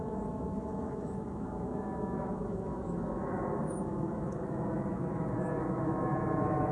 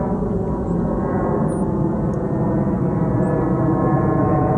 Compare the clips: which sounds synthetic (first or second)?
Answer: first